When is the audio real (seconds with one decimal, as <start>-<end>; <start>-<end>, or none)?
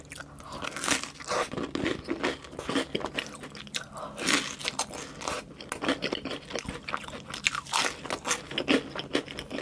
0.0-9.6